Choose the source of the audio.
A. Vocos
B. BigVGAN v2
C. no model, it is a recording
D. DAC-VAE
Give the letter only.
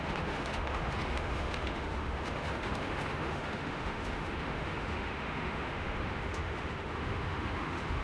D